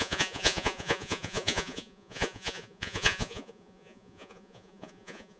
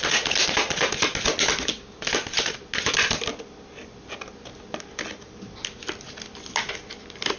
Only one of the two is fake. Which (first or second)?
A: first